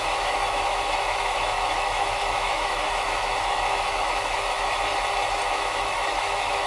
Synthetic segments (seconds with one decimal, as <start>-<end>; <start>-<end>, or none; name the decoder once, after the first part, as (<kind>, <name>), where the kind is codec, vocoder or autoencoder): 0.0-4.9 (autoencoder, DAC-VAE); 5.5-6.7